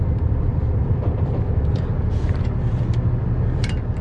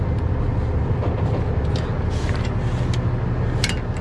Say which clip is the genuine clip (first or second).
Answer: second